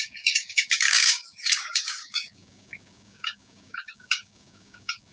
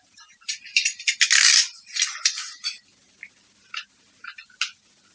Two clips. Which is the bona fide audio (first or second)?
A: second